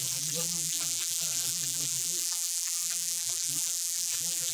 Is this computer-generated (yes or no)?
yes